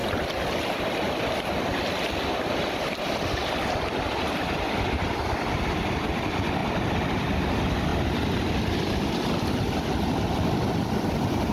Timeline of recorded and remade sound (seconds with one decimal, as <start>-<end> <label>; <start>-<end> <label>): 0.0-11.5 recorded